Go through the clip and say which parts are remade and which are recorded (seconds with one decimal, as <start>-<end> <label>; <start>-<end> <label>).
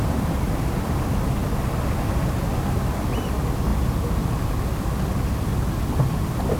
0.0-6.6 recorded